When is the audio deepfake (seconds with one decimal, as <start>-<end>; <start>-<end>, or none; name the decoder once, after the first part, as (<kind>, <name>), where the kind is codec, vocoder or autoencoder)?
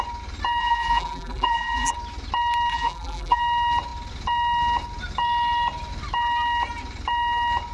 0.6-1.9 (vocoder, BigVGAN v2); 2.7-3.4